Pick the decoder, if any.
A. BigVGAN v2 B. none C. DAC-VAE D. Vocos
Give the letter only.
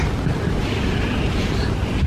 B